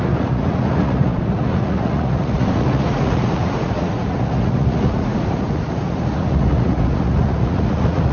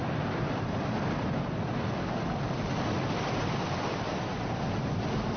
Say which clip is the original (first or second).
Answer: second